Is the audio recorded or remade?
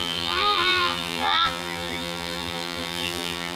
remade